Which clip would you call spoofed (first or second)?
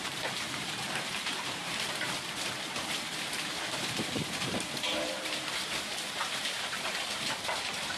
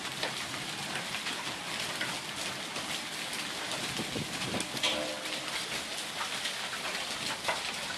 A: first